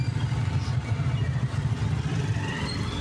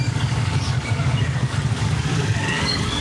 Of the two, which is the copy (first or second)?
second